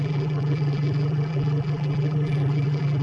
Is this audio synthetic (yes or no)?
yes